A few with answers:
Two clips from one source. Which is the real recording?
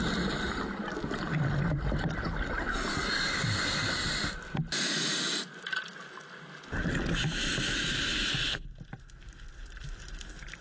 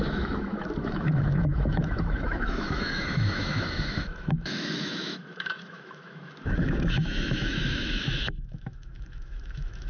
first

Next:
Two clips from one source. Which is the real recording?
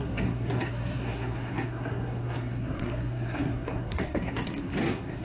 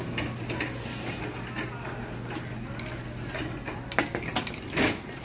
second